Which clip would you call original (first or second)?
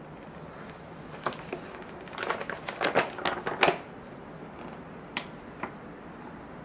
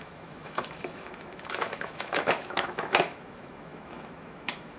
first